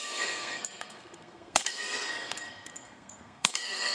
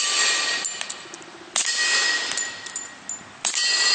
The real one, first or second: second